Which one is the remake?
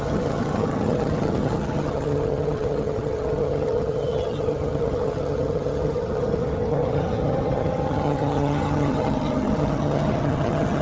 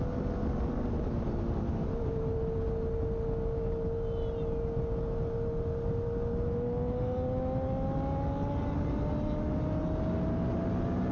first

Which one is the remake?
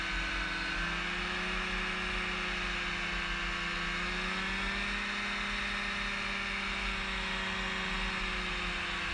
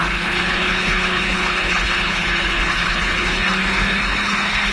second